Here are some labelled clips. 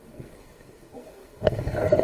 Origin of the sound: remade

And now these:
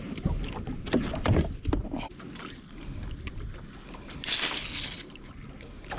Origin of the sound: recorded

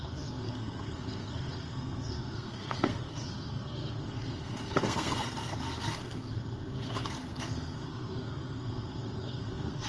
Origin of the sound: remade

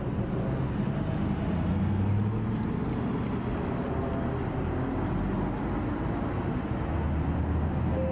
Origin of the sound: recorded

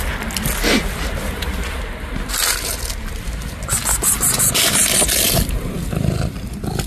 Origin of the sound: recorded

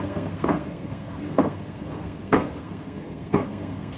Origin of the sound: remade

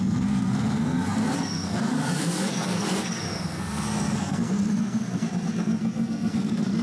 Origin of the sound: remade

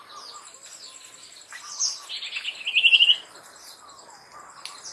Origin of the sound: recorded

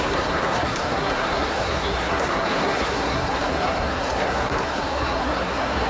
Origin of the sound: remade